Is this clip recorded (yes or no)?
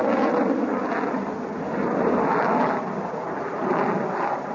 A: no